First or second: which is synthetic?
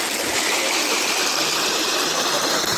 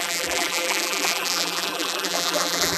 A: second